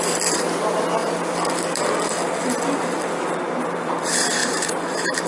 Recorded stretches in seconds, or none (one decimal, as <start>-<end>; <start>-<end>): 0.0-4.4